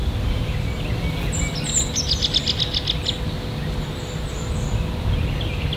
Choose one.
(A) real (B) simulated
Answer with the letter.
A